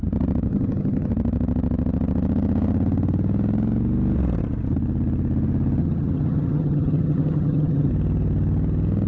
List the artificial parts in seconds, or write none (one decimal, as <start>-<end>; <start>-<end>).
0.5-1.1; 5.8-7.9